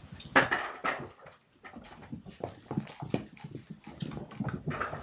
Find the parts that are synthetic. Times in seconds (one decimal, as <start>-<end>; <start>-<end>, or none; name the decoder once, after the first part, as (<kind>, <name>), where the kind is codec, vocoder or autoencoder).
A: none